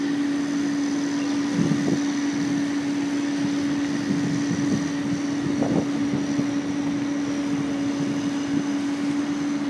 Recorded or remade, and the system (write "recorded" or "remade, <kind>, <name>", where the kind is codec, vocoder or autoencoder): recorded